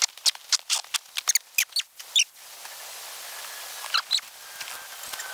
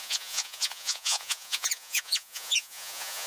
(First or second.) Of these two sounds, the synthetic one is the second